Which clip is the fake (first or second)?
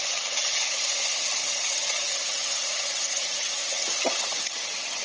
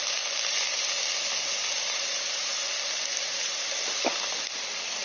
first